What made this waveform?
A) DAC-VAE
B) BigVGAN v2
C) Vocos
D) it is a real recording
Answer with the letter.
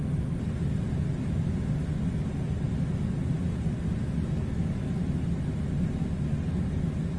D